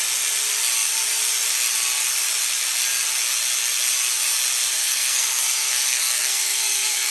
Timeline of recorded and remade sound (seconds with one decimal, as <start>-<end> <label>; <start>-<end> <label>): 0.0-4.8 recorded; 4.8-7.1 remade